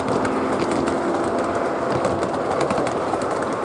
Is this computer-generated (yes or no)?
no